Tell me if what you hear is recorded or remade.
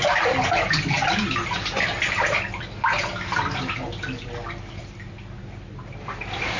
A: recorded